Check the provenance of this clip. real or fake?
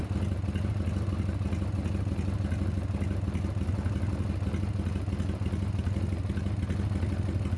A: real